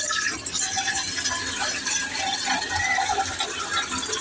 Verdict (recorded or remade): recorded